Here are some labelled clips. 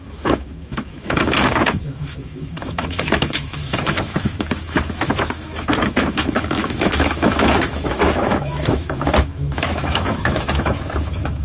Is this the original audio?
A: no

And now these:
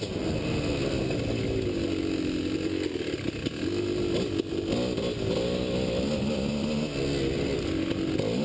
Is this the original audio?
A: yes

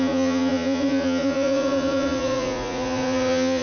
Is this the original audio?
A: no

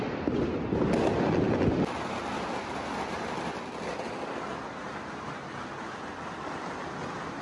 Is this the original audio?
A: yes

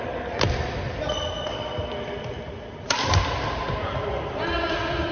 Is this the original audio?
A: yes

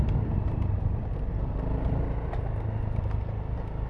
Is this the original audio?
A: yes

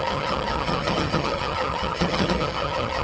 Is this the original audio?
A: no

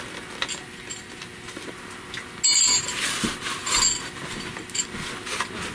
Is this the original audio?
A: yes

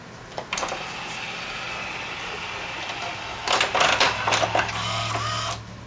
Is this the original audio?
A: yes